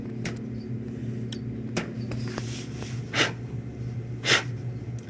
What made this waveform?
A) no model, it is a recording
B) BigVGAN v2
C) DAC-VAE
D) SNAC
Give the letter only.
A